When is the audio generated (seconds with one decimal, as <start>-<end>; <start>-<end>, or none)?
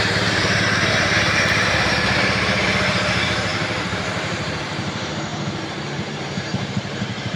0.0-7.4